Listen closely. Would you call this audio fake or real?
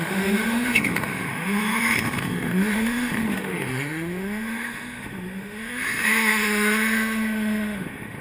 fake